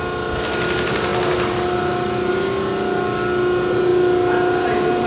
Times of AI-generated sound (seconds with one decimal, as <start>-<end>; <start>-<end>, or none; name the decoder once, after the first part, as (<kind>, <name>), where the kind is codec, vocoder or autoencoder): none